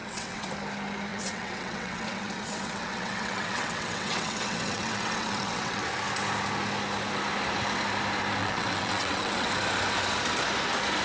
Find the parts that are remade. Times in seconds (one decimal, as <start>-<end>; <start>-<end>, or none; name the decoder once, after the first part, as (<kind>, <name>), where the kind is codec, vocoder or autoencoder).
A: 0.0-0.5 (vocoder, WaveNeXt); 1.1-5.8; 8.4-9.5